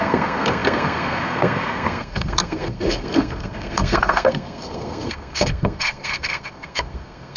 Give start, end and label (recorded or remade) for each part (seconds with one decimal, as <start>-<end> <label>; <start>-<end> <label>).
0.0-7.4 remade